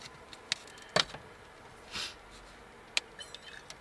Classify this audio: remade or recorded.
recorded